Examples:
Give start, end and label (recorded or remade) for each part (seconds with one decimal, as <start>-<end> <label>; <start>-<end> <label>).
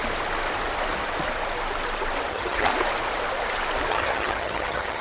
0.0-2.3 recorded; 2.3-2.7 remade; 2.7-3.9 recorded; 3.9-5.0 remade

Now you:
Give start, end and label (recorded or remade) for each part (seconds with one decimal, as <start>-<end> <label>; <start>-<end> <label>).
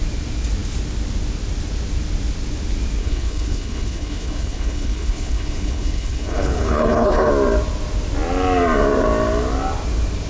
0.0-3.0 recorded; 3.0-7.3 remade; 7.3-10.3 recorded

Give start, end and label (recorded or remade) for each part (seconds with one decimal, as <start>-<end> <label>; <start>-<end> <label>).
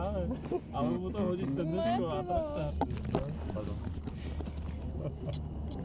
0.0-5.8 recorded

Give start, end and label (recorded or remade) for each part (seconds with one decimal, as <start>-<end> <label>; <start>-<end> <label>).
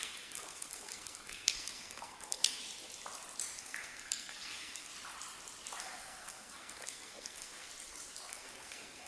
0.0-2.6 remade; 2.6-3.6 recorded; 3.6-4.9 remade; 4.9-5.8 recorded; 5.8-7.7 remade; 7.7-8.3 recorded; 8.3-9.1 remade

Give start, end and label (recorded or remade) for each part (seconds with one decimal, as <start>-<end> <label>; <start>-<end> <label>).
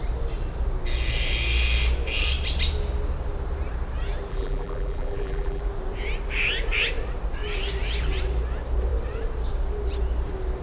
0.0-4.3 recorded; 4.3-5.6 remade; 5.6-10.6 recorded